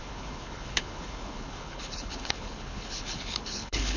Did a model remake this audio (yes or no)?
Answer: yes